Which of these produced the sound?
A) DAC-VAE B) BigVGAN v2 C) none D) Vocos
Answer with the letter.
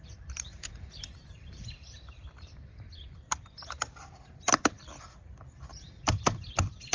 B